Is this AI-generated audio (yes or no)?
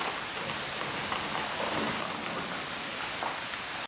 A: no